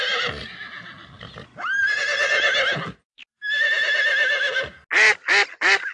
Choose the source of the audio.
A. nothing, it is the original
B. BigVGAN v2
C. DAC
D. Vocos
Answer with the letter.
A